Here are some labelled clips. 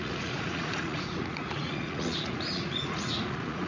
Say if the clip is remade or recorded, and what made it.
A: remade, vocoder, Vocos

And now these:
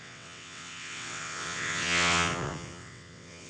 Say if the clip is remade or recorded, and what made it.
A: remade, vocoder, WaveNeXt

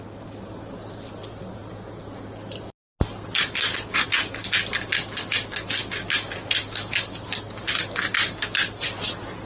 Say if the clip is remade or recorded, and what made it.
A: recorded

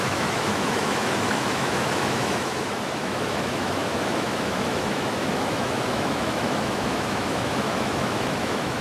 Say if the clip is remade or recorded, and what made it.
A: remade, autoencoder, DAC-VAE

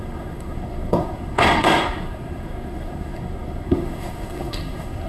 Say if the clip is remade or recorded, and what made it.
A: remade, codec, SNAC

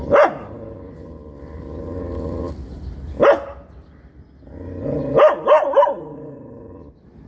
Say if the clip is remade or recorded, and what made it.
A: recorded